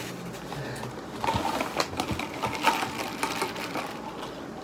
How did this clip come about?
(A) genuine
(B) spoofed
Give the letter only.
A